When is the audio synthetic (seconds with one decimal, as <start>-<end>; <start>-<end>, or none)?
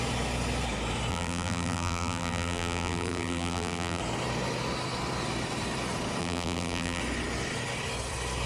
1.1-4.0; 6.2-7.0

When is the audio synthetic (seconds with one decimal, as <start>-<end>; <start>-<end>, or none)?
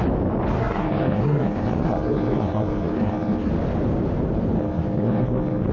0.6-3.5; 4.6-5.7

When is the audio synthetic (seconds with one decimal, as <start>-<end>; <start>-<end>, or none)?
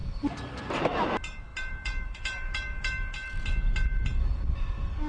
0.0-0.6; 1.5-4.6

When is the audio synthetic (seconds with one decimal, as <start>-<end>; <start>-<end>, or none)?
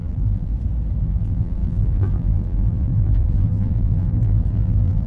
0.0-0.5; 1.0-5.1